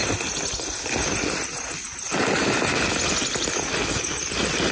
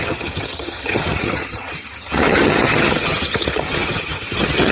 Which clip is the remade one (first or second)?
second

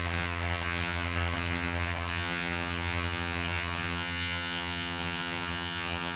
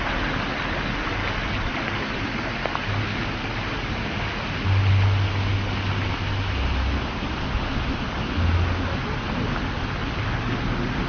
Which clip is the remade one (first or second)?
first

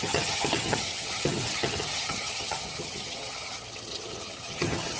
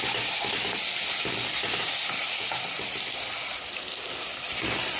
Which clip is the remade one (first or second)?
first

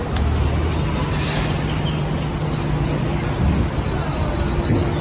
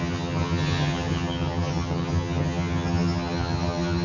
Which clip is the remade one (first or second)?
second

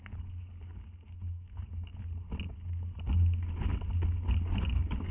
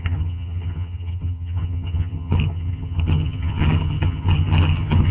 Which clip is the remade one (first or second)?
second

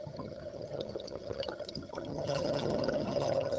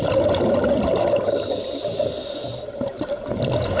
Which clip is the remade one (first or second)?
first